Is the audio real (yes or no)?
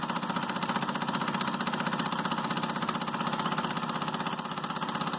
yes